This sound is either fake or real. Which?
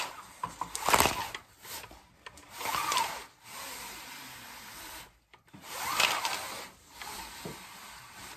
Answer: real